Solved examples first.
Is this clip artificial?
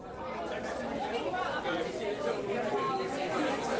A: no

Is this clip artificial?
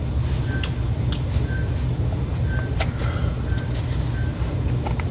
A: no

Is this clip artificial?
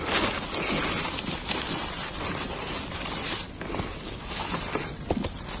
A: no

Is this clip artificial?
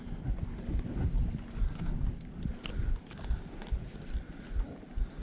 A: no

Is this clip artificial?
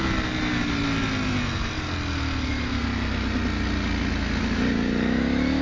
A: no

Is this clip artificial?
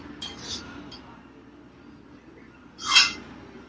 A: no